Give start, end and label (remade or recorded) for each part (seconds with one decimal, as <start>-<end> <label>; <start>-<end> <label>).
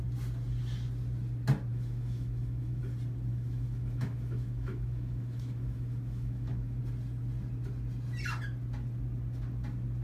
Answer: 0.0-1.7 recorded; 1.7-2.8 remade; 2.8-3.3 recorded; 3.3-6.8 remade; 6.8-10.0 recorded